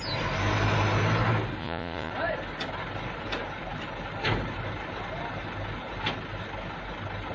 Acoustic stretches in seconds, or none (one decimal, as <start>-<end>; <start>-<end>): 0.0-1.6; 2.1-7.3